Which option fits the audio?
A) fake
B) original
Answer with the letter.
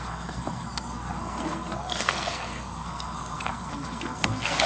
A